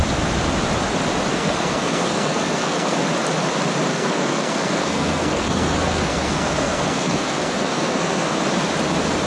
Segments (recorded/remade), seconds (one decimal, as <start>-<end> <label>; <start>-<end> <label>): 0.0-1.3 recorded; 1.3-3.0 remade; 3.0-3.9 recorded; 3.9-8.4 remade; 8.4-9.3 recorded